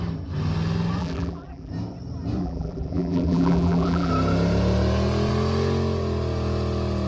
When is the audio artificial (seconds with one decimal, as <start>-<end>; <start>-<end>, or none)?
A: 1.0-1.7; 2.4-4.1